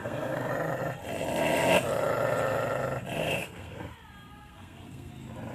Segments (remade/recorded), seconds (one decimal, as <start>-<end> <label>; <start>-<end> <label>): 0.0-0.5 remade; 0.5-3.2 recorded; 3.2-3.9 remade; 3.9-4.3 recorded; 4.3-5.1 remade; 5.1-5.5 recorded